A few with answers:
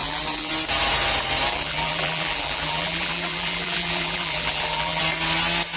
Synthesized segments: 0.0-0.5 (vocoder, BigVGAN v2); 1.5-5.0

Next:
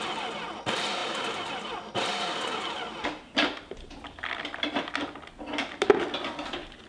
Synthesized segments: none

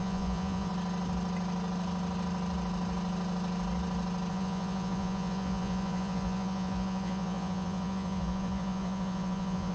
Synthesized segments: 0.0-0.7 (vocoder, Vocos); 4.3-9.7

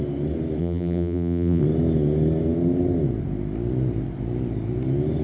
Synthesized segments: 0.6-1.6 (vocoder, BigVGAN v2)